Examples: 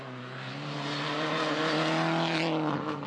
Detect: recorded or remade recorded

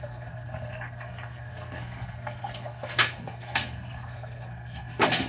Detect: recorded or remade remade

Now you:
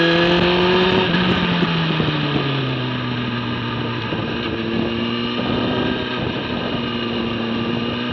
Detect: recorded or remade recorded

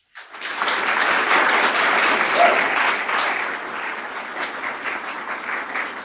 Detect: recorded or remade recorded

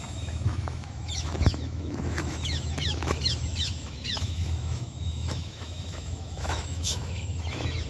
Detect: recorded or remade remade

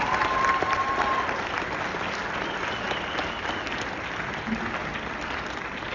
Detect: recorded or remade recorded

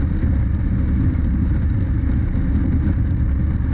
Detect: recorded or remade recorded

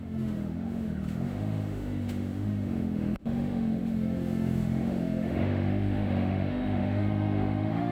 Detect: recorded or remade remade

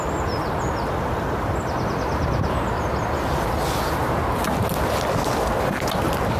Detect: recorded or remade recorded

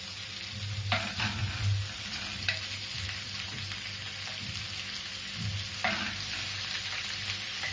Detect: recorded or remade recorded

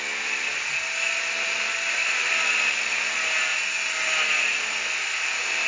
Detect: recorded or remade recorded